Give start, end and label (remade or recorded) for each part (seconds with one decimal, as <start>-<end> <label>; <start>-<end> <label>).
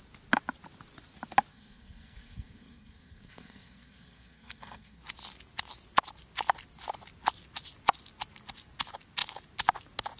0.0-1.5 recorded; 1.5-5.0 remade; 5.0-10.2 recorded